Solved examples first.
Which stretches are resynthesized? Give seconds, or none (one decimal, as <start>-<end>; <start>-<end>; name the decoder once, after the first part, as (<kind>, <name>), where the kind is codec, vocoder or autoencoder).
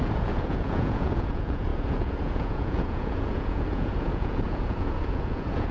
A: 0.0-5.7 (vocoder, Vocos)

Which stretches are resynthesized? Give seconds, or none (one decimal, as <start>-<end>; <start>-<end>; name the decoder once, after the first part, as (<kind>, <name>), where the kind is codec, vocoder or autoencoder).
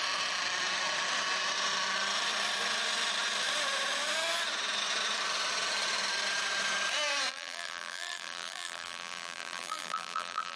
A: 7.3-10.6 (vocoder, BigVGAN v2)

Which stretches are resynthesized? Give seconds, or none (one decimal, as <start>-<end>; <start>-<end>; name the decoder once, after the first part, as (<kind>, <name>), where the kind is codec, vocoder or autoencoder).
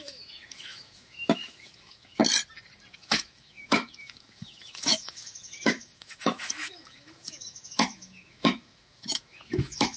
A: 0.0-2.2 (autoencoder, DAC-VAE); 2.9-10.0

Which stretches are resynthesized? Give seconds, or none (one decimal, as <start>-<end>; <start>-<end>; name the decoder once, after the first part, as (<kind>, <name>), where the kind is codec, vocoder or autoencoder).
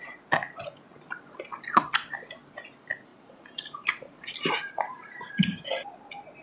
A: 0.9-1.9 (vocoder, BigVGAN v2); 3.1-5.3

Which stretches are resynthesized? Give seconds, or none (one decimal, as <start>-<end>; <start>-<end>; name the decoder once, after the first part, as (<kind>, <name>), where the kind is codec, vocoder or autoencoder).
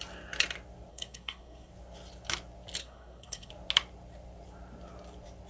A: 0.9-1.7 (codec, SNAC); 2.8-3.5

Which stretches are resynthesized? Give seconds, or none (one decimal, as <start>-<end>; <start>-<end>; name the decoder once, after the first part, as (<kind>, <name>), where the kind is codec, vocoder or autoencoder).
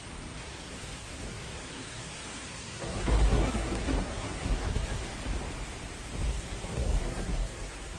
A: 0.4-5.1 (codec, SNAC); 6.3-8.0